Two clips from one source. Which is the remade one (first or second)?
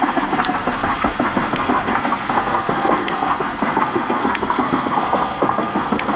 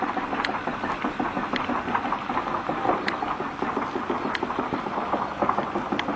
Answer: first